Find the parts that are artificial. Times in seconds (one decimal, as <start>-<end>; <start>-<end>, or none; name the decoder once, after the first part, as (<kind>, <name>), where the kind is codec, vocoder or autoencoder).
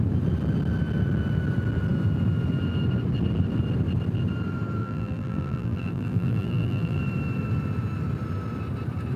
4.8-7.0 (vocoder, BigVGAN v2)